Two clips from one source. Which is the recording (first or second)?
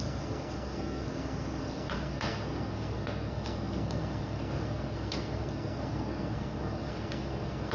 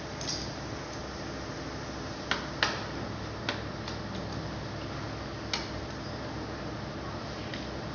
second